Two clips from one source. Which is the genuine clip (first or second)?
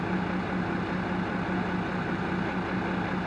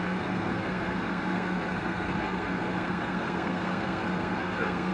first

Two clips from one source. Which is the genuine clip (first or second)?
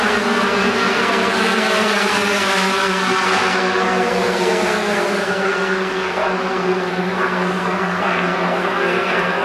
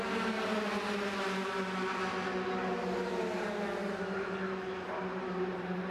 second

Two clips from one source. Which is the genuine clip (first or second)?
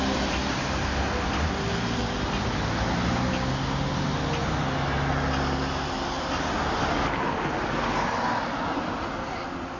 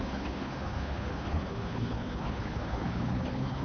first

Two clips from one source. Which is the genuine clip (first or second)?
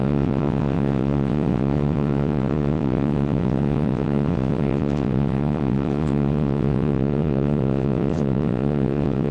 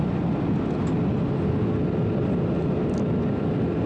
second